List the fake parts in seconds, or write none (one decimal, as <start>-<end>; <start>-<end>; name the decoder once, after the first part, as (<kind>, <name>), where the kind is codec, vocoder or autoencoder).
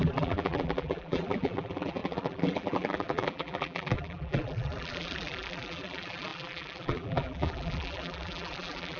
0.0-9.0 (vocoder, BigVGAN v2)